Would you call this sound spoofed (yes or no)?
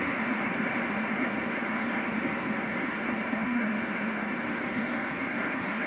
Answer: yes